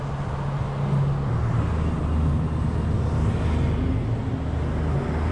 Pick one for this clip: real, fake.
real